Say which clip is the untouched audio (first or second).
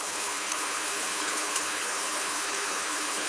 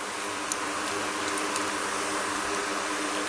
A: second